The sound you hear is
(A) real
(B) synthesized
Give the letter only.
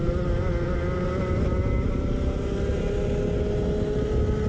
A